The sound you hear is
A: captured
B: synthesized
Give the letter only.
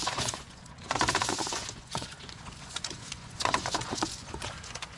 B